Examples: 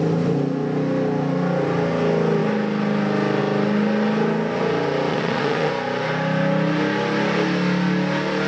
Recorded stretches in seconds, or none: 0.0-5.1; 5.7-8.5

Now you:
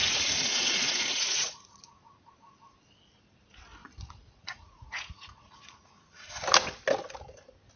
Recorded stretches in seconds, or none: 2.3-3.8; 6.3-7.8

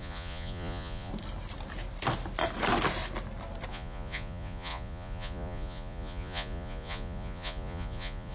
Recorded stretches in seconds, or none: 1.1-3.7

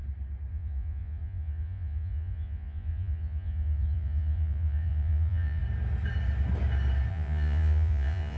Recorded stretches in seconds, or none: 0.0-0.5; 5.6-7.1

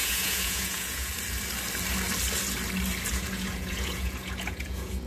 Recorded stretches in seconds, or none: 1.1-3.1

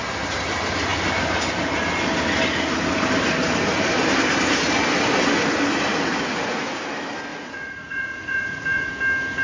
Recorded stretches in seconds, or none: 0.0-5.9; 6.8-7.3; 8.9-9.4

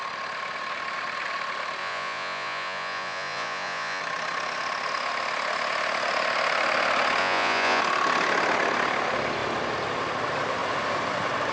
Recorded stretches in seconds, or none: 0.0-1.8; 4.0-7.2; 7.8-11.5